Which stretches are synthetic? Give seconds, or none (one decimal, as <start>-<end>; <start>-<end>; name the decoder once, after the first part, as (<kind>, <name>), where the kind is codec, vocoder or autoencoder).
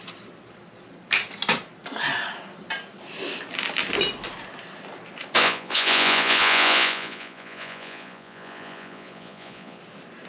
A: 5.4-9.8 (vocoder, Vocos)